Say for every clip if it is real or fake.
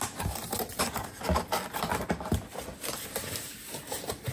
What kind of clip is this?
real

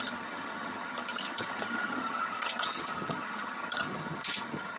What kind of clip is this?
fake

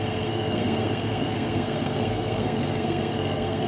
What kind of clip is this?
fake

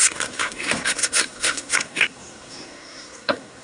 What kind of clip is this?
fake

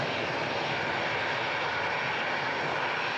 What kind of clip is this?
real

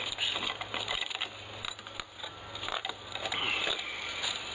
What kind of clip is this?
real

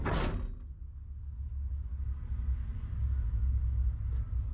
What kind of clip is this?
real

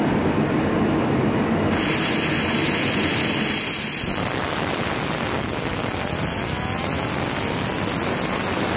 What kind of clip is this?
real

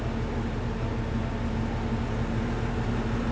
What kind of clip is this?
real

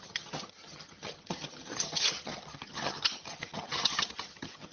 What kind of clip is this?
fake